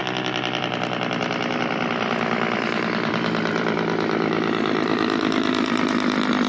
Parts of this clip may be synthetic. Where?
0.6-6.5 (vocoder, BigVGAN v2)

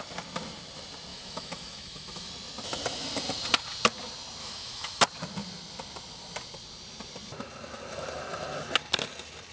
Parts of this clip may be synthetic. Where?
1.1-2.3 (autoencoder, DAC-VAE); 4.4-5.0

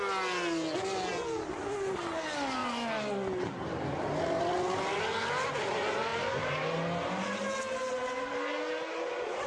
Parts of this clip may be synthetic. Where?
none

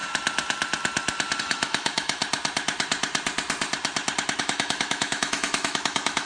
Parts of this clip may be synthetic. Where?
1.4-2.2 (autoencoder, DAC-VAE); 4.4-6.3